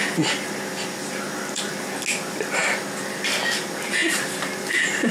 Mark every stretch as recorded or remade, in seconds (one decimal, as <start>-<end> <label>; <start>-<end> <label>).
0.0-5.1 recorded